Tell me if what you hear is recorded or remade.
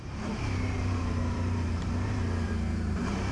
remade